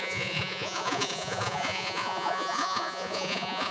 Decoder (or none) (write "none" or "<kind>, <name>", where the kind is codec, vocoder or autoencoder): vocoder, Vocos